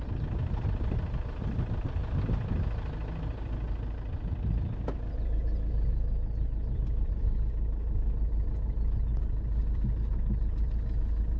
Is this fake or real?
real